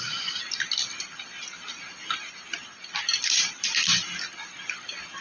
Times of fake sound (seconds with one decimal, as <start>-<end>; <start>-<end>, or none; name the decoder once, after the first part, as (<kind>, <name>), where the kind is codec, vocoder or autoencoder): none